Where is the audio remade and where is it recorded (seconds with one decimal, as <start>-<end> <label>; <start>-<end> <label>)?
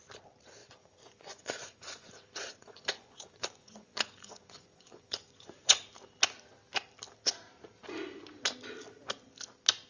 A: 0.0-0.6 recorded; 0.6-2.1 remade; 2.1-2.6 recorded; 2.6-5.8 remade; 5.8-9.9 recorded